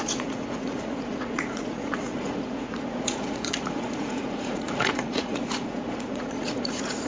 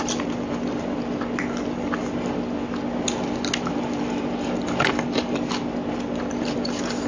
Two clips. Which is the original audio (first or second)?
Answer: second